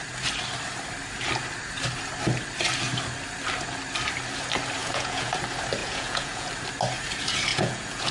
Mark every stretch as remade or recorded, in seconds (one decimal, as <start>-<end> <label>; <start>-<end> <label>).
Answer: 0.0-4.8 recorded; 4.8-5.3 remade; 5.3-5.8 recorded; 5.8-6.5 remade; 6.5-7.5 recorded; 7.5-8.1 remade